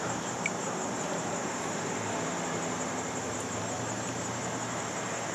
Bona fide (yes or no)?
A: no